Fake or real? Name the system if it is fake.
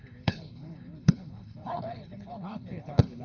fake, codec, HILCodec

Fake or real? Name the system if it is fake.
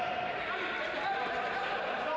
real